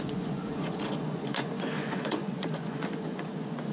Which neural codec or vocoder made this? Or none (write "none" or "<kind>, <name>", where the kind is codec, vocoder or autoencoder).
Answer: vocoder, Vocos